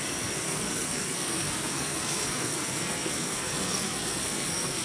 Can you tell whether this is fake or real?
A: fake